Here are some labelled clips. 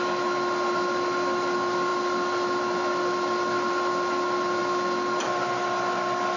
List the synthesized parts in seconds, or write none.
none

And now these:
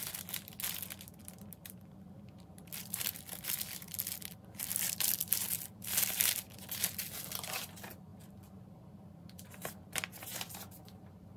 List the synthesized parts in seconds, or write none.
1.2-3.1 (vocoder, BigVGAN v2); 4.7-5.2; 8.1-8.8; 10.8-11.4

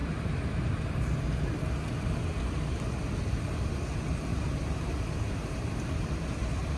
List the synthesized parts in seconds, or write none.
0.0-1.6 (vocoder, BigVGAN v2); 4.3-6.1

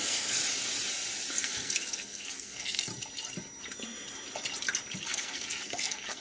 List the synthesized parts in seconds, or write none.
0.0-0.4 (codec, SNAC); 1.4-2.9; 5.0-6.2

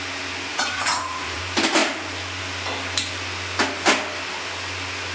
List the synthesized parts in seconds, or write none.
0.5-1.4 (vocoder, Vocos)

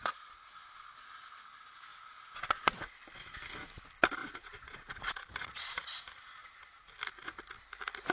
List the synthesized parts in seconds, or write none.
4.2-6.0 (vocoder, Vocos); 6.4-6.9

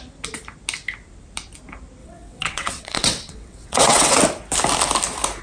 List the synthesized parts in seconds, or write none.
2.0-4.2 (vocoder, WaveNeXt)

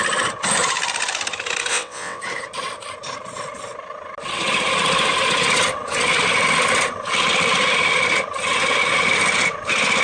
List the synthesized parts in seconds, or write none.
1.7-2.2 (vocoder, WaveNeXt)